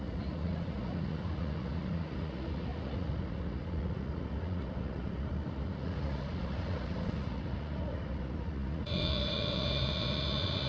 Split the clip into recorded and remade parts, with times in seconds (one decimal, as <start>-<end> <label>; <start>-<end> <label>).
0.0-10.7 remade